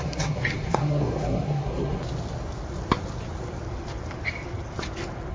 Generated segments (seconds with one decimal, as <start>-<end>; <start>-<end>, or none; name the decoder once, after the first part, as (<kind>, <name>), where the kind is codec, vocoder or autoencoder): 0.0-2.0 (codec, SNAC)